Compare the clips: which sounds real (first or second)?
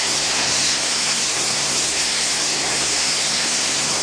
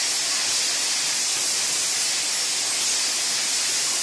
second